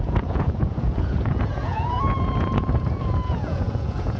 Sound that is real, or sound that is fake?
fake